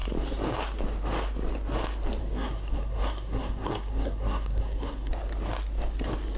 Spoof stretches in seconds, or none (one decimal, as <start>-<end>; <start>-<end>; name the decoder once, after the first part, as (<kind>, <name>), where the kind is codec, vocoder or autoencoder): 2.2-5.1 (codec, SNAC)